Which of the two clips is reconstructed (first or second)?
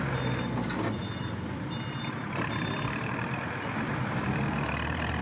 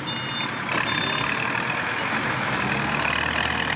first